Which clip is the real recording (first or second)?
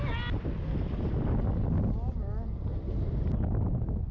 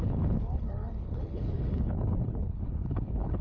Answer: first